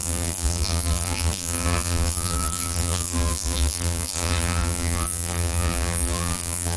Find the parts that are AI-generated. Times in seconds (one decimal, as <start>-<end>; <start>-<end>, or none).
0.0-6.8